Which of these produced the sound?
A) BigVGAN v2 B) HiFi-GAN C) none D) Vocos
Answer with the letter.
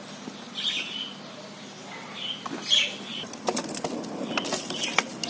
C